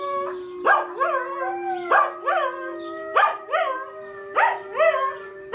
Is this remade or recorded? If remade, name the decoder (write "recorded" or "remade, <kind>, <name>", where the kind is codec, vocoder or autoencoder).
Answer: recorded